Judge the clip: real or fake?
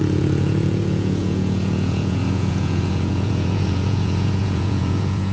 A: fake